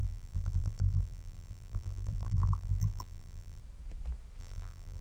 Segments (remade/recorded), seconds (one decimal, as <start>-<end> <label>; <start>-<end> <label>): 0.0-3.6 remade; 3.6-4.4 recorded; 4.4-5.0 remade